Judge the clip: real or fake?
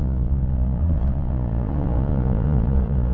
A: fake